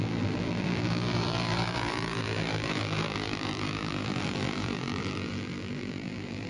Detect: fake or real fake